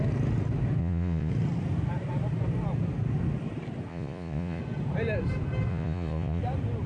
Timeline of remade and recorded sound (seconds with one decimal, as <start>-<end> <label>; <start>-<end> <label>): 0.0-0.8 recorded; 0.8-1.3 remade; 1.3-3.9 recorded; 3.9-4.6 remade; 4.6-5.7 recorded; 5.7-6.4 remade; 6.4-6.9 recorded